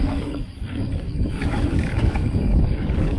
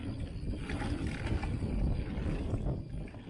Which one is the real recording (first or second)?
second